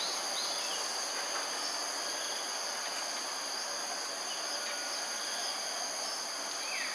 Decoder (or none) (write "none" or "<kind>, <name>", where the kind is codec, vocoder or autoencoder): none